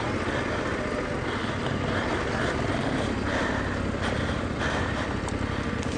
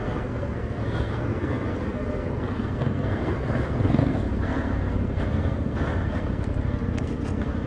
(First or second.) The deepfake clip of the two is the second